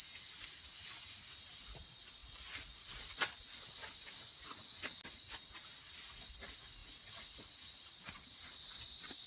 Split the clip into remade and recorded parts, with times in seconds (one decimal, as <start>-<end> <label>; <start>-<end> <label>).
0.0-6.8 recorded; 6.8-9.3 remade